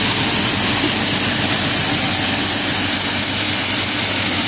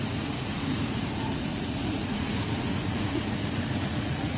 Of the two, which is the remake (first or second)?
second